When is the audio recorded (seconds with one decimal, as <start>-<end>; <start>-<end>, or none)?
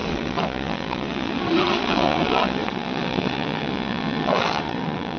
none